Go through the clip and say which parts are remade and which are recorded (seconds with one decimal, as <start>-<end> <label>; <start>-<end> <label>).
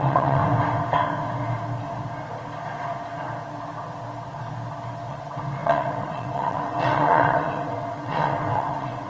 0.0-0.4 remade; 0.4-5.1 recorded; 5.1-9.1 remade